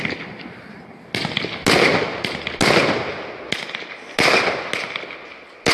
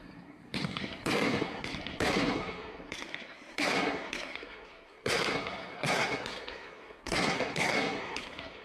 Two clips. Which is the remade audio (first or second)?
second